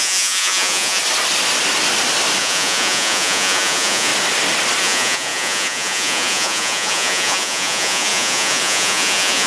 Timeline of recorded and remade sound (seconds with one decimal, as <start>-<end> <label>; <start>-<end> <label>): 0.0-1.0 remade; 1.0-2.4 recorded; 2.4-4.1 remade; 4.1-4.8 recorded; 4.8-9.5 remade